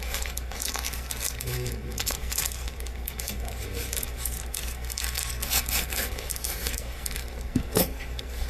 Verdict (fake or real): fake